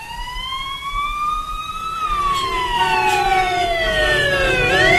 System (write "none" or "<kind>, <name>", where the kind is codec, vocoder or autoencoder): vocoder, BigVGAN v2